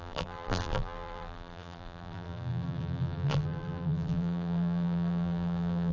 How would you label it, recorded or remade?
remade